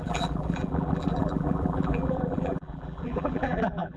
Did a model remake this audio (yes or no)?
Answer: yes